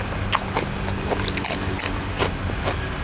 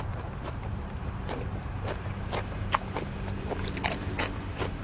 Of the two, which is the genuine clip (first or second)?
first